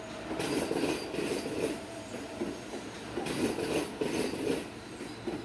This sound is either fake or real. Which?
fake